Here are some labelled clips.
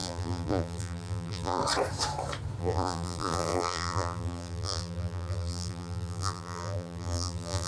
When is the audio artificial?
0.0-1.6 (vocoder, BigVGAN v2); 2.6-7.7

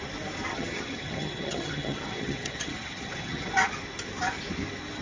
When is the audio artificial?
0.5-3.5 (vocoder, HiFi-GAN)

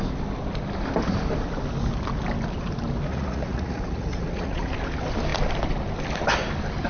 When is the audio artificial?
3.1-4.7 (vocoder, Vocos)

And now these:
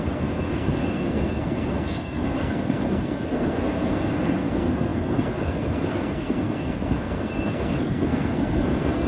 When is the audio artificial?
0.0-9.1 (codec, SNAC)

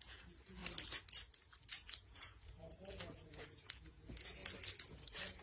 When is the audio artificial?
0.0-0.6 (vocoder, Vocos); 1.7-4.4; 4.9-5.4

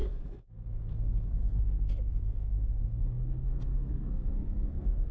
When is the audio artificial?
0.0-5.1 (codec, SNAC)

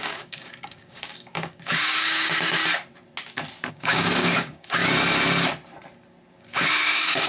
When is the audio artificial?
0.0-2.6 (codec, DAC); 3.7-4.8; 6.3-7.3